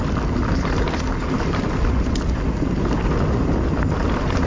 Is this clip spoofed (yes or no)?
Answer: no